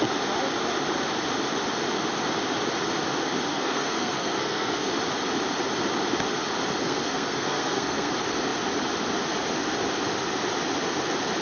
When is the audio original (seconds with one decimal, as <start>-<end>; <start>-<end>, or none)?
0.0-3.5; 4.9-6.8; 8.1-11.4